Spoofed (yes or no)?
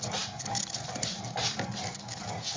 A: no